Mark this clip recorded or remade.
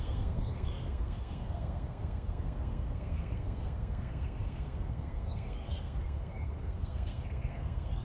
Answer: remade